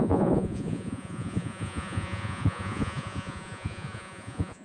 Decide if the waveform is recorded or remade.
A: remade